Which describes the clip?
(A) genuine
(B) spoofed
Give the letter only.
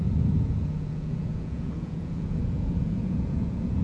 B